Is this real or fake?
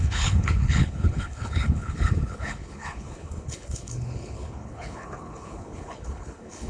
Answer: fake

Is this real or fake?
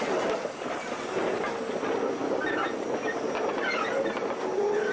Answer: real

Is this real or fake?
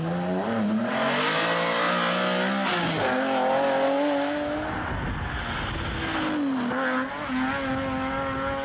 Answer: real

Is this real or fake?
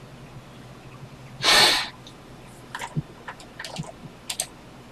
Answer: real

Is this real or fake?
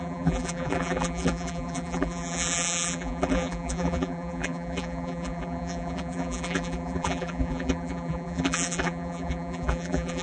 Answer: fake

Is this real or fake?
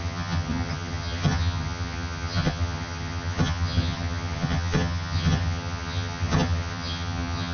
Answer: fake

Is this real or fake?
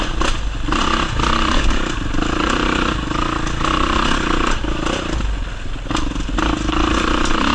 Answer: real